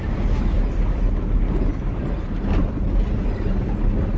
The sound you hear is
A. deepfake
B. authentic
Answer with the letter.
B